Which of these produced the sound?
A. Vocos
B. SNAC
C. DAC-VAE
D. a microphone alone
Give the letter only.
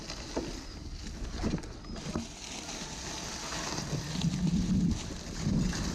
D